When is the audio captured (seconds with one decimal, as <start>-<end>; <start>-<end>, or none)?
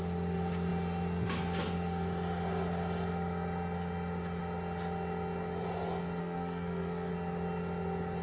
0.0-6.2; 7.1-8.2